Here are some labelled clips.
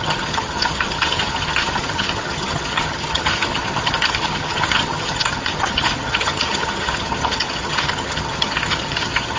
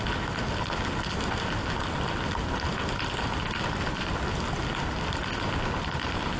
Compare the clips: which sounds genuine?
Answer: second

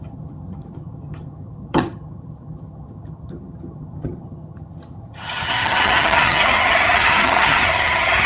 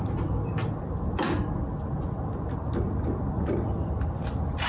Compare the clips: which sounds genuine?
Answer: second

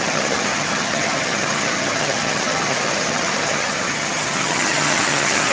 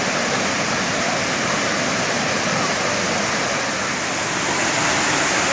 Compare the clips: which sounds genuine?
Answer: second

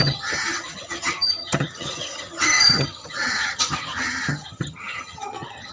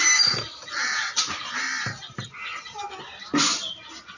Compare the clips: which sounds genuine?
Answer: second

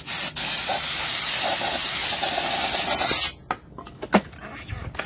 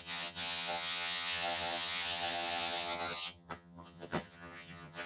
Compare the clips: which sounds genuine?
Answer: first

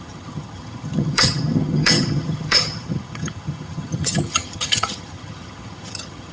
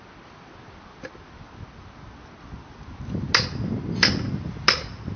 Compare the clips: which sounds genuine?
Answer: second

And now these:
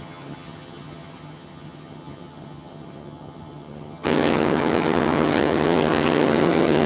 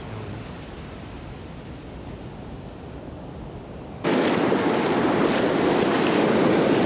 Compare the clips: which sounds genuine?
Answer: second